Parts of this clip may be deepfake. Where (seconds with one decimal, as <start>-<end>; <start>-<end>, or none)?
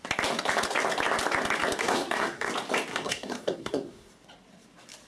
1.8-2.5; 2.9-4.1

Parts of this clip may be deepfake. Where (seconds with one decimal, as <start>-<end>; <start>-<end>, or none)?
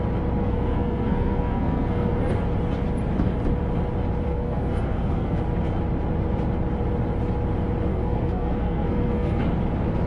0.4-2.3; 4.3-5.4; 7.9-9.4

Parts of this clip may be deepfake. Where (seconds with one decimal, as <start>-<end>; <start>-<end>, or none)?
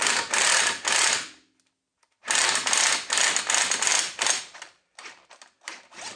none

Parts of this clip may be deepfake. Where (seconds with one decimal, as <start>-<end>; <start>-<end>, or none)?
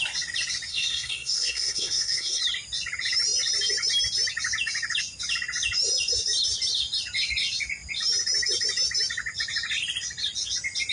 0.7-2.4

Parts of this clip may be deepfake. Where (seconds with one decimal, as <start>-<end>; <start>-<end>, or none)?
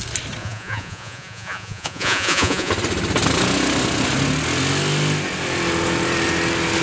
0.4-2.7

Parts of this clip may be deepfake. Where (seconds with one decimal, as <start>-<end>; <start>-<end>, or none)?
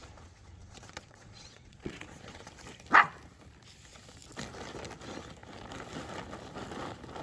0.0-2.5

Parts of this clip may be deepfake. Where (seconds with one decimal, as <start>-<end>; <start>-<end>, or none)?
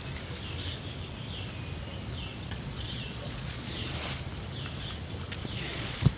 2.3-3.9; 5.4-6.2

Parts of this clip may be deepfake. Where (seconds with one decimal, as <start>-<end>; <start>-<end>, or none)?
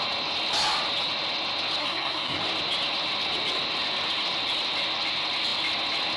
1.8-2.4